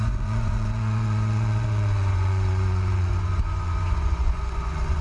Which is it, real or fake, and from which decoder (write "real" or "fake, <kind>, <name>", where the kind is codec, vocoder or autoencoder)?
fake, vocoder, Vocos